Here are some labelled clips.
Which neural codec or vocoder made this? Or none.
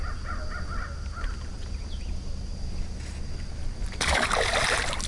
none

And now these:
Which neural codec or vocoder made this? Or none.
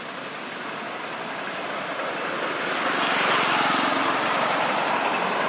none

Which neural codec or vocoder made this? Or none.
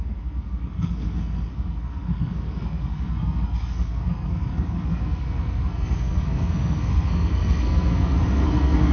codec, SNAC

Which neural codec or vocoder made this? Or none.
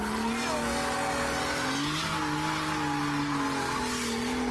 none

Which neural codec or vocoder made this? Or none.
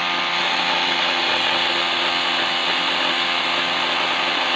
none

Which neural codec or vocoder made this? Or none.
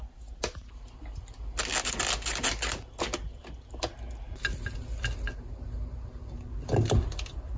none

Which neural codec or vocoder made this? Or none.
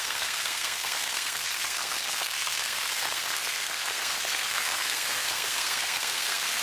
codec, SNAC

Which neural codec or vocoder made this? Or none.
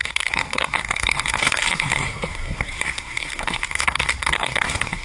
codec, SNAC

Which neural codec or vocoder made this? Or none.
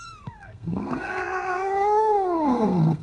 codec, SNAC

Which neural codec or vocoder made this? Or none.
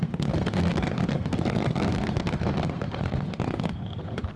codec, SNAC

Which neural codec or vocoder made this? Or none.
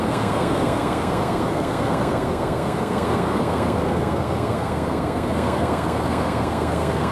codec, SNAC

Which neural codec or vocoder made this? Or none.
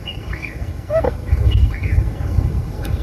codec, SNAC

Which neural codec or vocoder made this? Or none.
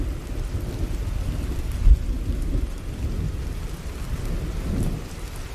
none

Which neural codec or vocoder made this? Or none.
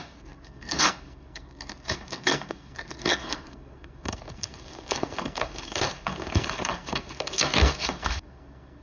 codec, SNAC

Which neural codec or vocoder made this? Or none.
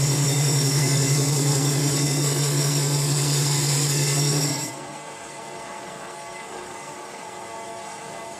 codec, SNAC